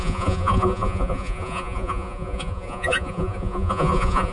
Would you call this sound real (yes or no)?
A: no